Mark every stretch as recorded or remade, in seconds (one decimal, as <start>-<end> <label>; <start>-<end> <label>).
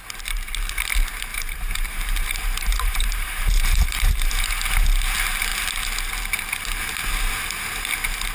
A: 0.0-1.3 recorded; 1.3-4.4 remade; 4.4-8.3 recorded